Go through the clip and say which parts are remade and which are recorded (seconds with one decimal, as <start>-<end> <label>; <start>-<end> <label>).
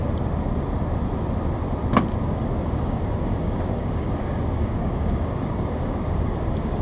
0.0-2.2 recorded; 2.2-6.8 remade